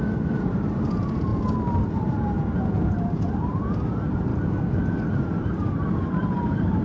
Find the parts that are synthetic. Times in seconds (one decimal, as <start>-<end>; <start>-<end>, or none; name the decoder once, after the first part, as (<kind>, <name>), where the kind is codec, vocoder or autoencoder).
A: 0.0-1.3 (vocoder, BigVGAN v2); 2.0-4.3; 5.0-6.8